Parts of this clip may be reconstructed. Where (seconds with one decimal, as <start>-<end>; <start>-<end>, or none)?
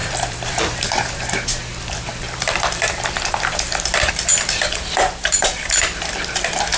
0.0-6.8